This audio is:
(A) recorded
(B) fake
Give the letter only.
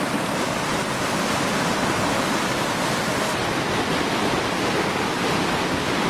A